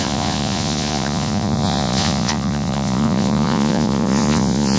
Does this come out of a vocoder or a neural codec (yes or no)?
yes